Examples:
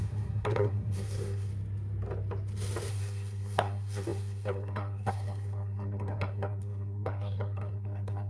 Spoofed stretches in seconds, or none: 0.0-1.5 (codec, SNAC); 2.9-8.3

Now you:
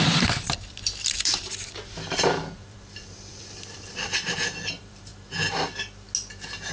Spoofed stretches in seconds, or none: 0.0-5.1 (vocoder, BigVGAN v2)

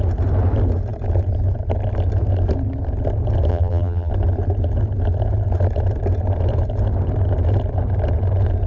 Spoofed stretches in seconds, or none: 3.5-4.1 (vocoder, BigVGAN v2)

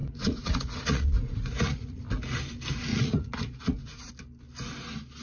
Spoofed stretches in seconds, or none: 0.0-2.0 (vocoder, Vocos); 2.9-4.1